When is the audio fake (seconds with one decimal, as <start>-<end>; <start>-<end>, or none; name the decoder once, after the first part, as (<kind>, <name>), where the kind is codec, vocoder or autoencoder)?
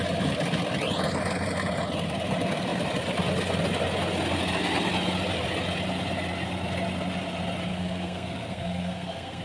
7.7-9.4 (codec, SNAC)